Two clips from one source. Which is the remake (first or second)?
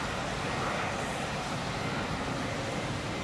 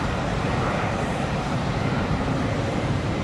second